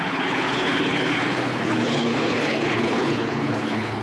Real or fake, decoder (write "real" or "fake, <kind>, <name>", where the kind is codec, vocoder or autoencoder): fake, codec, HILCodec